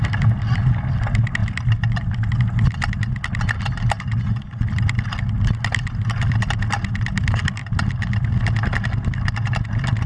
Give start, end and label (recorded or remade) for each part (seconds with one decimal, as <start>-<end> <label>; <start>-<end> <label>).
0.0-10.1 recorded